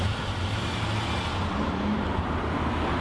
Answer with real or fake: real